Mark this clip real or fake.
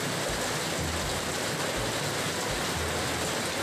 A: real